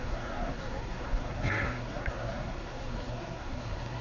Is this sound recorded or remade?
remade